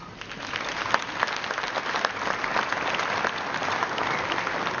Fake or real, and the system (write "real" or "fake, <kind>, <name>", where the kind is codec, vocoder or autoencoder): real